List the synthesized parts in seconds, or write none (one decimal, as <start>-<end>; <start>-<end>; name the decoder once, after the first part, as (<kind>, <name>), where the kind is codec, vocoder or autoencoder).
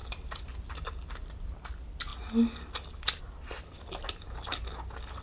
none